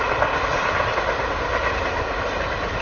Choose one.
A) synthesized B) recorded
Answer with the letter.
B